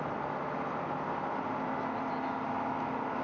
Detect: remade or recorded recorded